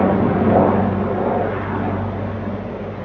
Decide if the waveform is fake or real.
real